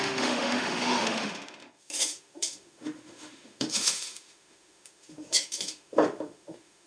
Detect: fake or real fake